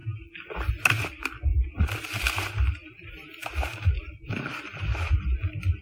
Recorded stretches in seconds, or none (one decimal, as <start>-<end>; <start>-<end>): 0.0-1.5; 3.1-3.7; 4.5-5.8